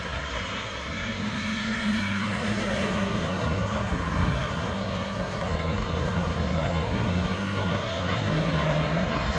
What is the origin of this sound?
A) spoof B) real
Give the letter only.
A